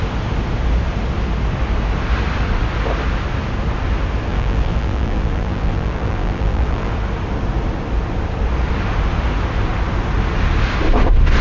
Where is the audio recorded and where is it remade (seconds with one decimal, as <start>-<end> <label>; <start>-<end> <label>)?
0.0-4.3 recorded; 4.3-6.9 remade; 6.9-11.4 recorded